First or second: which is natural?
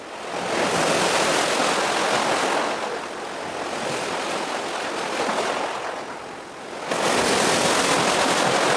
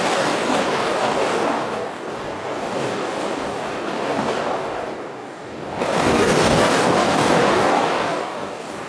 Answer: first